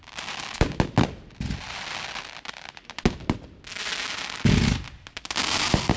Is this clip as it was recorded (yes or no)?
yes